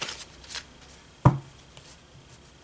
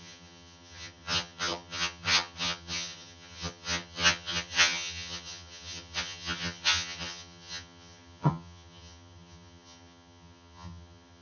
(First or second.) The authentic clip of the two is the first